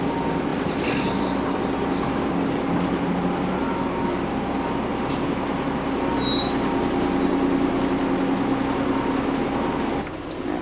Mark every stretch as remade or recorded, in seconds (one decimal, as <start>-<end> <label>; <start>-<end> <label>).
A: 0.0-10.6 recorded